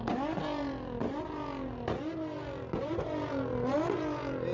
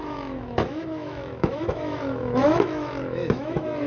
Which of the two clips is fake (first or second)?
second